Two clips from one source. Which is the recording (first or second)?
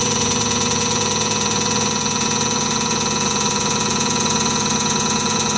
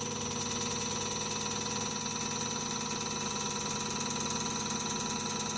second